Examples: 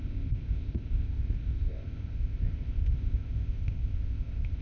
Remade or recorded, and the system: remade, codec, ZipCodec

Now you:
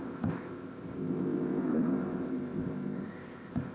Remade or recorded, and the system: remade, codec, ZipCodec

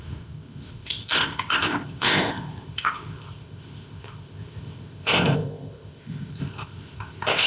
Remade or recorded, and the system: remade, codec, ZipCodec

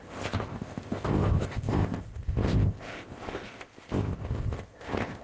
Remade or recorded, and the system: remade, codec, ZipCodec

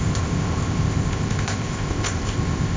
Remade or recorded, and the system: remade, codec, ZipCodec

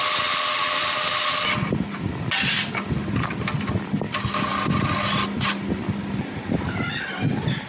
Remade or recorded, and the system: recorded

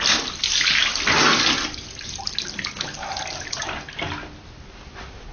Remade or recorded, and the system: recorded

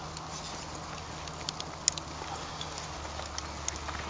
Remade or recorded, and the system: recorded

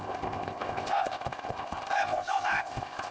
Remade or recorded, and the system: remade, codec, ZipCodec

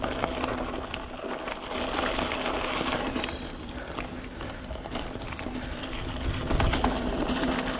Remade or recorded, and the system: recorded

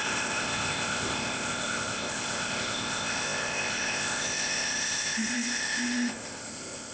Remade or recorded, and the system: remade, codec, ZipCodec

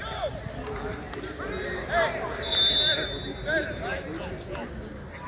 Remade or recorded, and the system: recorded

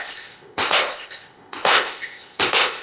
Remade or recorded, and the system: remade, codec, ZipCodec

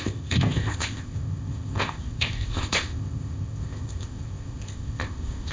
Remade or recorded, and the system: remade, codec, ZipCodec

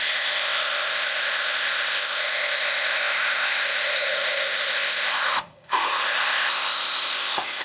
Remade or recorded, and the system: remade, codec, ZipCodec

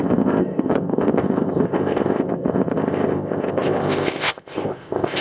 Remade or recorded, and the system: remade, codec, ZipCodec